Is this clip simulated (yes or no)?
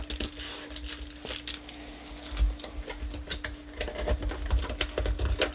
no